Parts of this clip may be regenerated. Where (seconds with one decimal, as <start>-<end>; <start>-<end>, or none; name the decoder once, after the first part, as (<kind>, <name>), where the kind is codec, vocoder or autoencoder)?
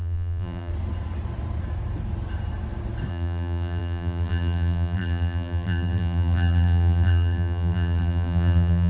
0.0-0.7 (vocoder, BigVGAN v2); 3.1-8.9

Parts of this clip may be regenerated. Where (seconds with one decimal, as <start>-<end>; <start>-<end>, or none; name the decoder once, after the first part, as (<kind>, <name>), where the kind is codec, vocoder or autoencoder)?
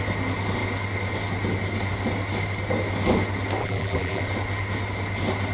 3.6-4.2 (vocoder, BigVGAN v2)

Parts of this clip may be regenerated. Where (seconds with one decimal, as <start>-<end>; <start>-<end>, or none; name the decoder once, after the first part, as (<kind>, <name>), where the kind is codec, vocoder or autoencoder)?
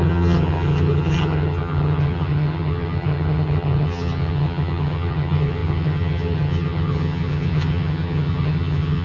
0.0-9.0 (vocoder, HiFi-GAN)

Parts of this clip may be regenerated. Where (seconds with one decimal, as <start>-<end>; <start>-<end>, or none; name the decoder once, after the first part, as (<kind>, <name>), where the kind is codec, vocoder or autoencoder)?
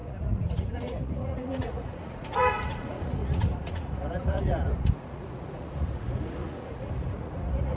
0.0-7.8 (vocoder, Vocos)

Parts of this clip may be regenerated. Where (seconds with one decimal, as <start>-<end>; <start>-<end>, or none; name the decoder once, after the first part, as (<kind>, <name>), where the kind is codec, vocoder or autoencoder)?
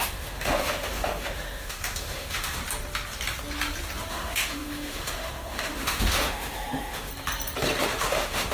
0.0-2.6 (autoencoder, DAC-VAE); 4.1-7.1; 8.0-8.5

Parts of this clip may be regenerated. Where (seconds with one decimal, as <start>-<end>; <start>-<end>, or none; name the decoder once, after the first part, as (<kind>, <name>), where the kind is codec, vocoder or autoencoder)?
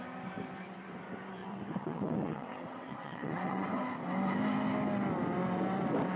1.4-3.8 (vocoder, WaveNeXt)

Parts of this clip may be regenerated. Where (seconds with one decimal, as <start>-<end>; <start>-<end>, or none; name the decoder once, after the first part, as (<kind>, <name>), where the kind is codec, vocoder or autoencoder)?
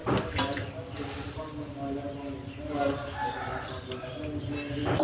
0.0-2.6 (vocoder, BigVGAN v2); 3.5-4.1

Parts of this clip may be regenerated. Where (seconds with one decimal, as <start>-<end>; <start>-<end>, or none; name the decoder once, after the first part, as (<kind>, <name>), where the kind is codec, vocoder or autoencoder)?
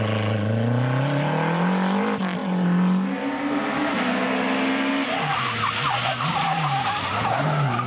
none